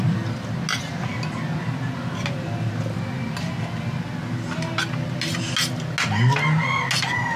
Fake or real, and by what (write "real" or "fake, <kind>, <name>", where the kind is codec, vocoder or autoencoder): real